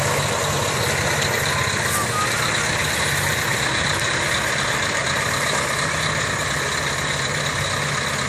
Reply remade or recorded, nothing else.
recorded